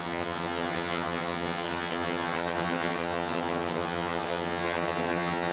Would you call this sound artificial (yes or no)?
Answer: yes